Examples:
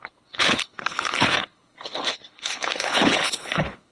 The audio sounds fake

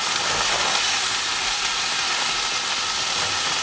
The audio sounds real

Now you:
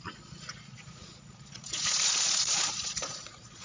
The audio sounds fake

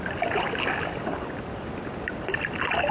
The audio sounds real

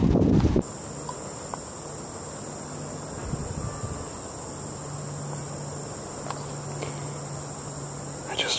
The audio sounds real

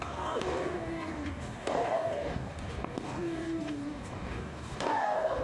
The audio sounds fake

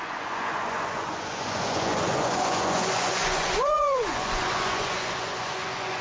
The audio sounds fake